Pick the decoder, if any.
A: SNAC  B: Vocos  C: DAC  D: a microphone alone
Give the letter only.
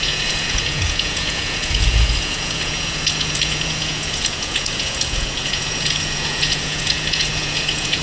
B